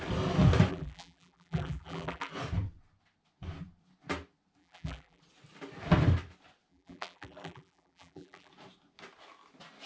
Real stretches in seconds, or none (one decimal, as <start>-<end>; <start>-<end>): 0.0-0.7; 2.3-4.6; 5.2-6.7; 8.5-9.9